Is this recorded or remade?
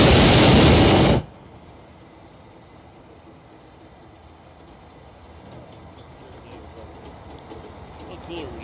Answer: recorded